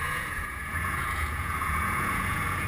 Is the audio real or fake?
fake